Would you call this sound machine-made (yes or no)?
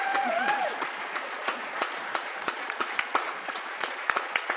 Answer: yes